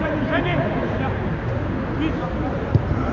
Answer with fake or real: real